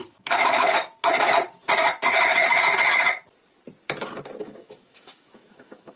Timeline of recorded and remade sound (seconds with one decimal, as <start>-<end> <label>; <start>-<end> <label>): 0.0-0.8 remade; 0.8-4.4 recorded; 4.4-6.0 remade